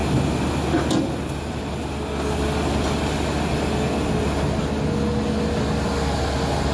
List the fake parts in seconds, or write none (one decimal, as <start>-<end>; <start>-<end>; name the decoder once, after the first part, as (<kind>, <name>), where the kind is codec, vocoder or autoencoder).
none